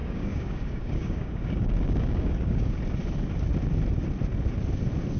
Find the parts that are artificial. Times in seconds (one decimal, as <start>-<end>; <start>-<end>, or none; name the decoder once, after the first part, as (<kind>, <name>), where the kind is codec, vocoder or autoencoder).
0.0-2.8 (codec, DAC)